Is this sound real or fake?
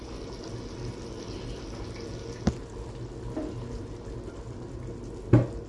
real